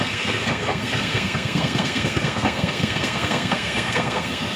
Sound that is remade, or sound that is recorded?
remade